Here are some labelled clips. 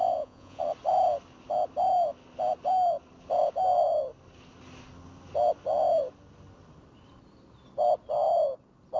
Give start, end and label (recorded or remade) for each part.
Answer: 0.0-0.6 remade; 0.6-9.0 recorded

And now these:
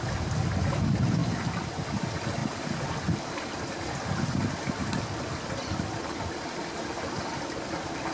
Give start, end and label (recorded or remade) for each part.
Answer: 0.0-8.1 recorded

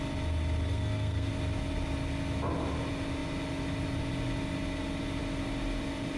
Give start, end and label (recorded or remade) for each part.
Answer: 0.0-0.7 recorded; 0.7-1.3 remade; 1.3-6.2 recorded

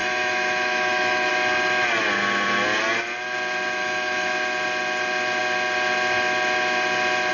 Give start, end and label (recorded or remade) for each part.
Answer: 0.0-1.3 remade; 1.3-3.8 recorded; 3.8-4.3 remade; 4.3-7.3 recorded

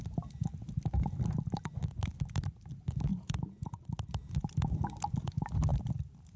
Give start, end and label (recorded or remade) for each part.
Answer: 0.0-3.1 recorded; 3.1-3.8 remade; 3.8-6.4 recorded

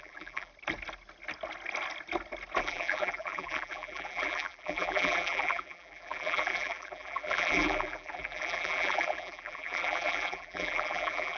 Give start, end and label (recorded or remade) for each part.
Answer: 0.0-0.5 remade; 0.5-2.6 recorded; 2.6-11.4 remade

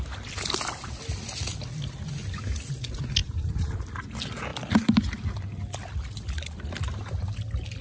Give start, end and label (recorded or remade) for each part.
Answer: 0.0-3.2 recorded; 3.2-3.7 remade; 3.7-7.8 recorded